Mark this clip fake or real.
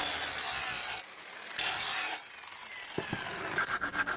real